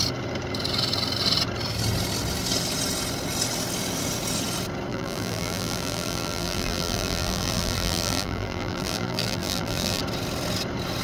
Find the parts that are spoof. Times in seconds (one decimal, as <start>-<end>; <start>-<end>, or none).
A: 4.9-10.0